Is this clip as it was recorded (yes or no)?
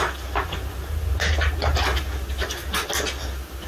no